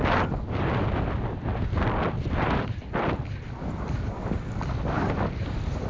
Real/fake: real